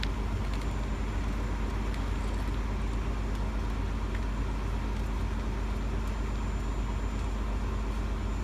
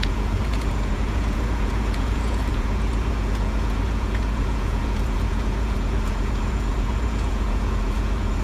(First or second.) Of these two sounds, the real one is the first